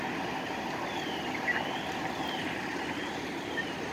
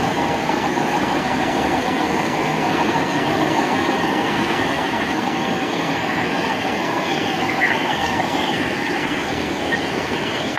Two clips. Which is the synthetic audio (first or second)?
second